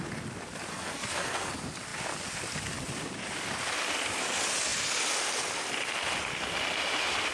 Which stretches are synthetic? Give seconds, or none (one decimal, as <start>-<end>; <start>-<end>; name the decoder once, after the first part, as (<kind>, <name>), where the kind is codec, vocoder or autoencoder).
0.7-1.5 (codec, SNAC)